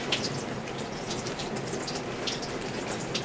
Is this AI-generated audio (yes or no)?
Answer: no